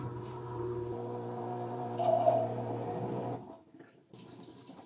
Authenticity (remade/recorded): remade